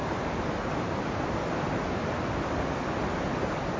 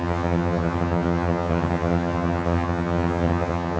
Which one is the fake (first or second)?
second